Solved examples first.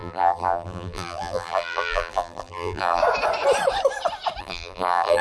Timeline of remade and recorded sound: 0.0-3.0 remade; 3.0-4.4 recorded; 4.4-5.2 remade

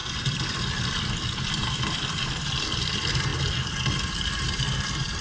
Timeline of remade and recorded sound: 0.0-5.2 recorded

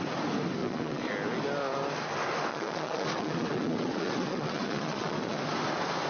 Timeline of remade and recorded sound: 0.0-0.6 recorded; 0.6-1.1 remade; 1.1-2.5 recorded; 2.5-5.4 remade; 5.4-6.1 recorded

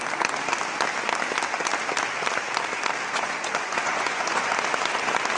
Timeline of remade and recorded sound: 0.0-3.1 recorded; 3.1-4.5 remade; 4.5-5.4 recorded

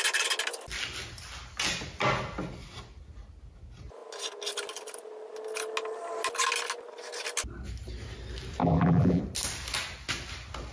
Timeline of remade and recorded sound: 0.0-8.6 recorded; 8.6-9.2 remade; 9.2-10.7 recorded